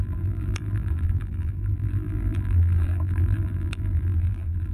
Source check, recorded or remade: remade